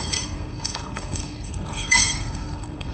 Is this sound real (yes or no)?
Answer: no